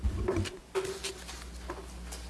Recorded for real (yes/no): yes